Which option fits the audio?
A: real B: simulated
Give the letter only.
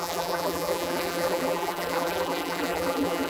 B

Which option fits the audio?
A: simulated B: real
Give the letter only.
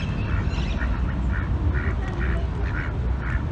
B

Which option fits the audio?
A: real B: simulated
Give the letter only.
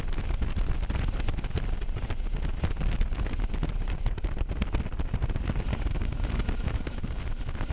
A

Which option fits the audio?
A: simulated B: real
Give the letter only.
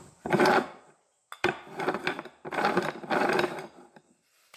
B